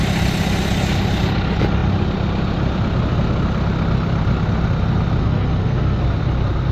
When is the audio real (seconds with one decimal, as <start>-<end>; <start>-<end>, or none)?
0.0-5.2; 6.0-6.7